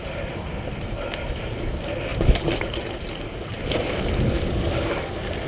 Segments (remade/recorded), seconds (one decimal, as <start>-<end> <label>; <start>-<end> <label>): 0.0-5.5 recorded